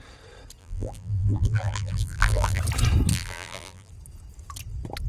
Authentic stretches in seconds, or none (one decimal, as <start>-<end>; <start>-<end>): 0.0-0.6; 2.6-3.1; 3.9-5.1